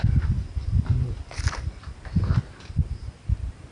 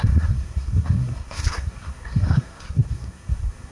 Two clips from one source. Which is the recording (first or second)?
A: first